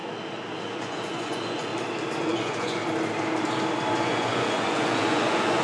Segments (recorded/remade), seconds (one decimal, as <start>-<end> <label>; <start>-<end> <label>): 0.0-0.6 recorded; 0.6-1.7 remade; 1.7-2.2 recorded; 2.2-2.8 remade; 2.8-3.9 recorded; 3.9-5.6 remade